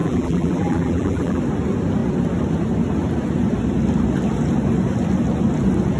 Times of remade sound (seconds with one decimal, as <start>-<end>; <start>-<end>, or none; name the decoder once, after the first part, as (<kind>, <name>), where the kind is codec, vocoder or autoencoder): 0.0-1.4 (vocoder, BigVGAN v2)